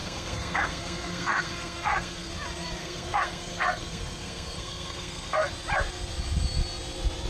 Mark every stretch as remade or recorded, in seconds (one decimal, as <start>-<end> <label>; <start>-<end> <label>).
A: 0.0-2.3 remade; 2.3-2.8 recorded; 2.8-5.5 remade; 5.5-7.3 recorded